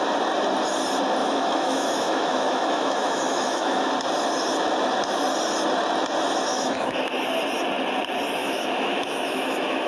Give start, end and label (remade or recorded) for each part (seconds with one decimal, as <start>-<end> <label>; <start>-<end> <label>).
0.0-1.2 recorded; 1.2-3.9 remade; 3.9-6.5 recorded; 6.5-7.0 remade; 7.0-8.4 recorded; 8.4-9.9 remade